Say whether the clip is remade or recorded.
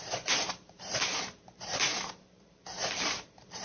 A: remade